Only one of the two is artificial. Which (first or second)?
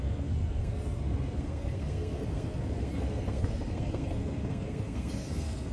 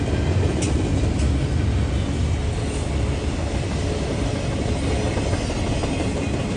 first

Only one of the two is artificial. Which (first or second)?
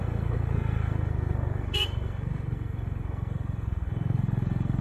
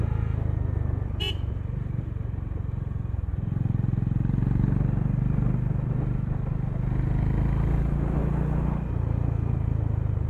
first